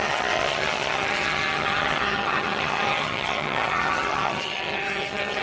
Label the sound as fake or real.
fake